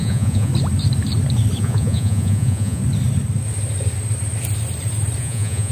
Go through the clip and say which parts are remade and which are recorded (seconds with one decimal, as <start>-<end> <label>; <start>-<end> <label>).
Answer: 0.0-0.5 remade; 0.5-1.6 recorded; 1.6-2.8 remade; 2.8-5.2 recorded; 5.2-5.7 remade